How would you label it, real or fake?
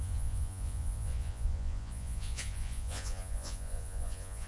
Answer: fake